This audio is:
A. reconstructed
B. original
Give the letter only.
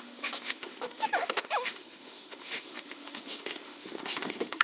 A